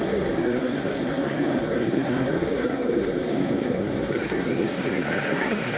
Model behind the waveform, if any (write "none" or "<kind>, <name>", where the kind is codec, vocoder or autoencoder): codec, SNAC